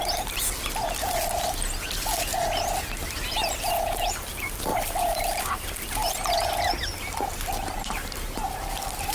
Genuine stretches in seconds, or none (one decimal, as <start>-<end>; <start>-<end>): 0.6-3.7; 6.0-6.7